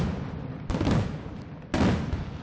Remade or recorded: recorded